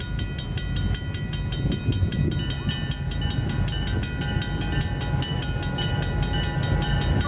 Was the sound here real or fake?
real